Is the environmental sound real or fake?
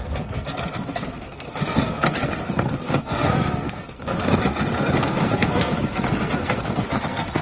fake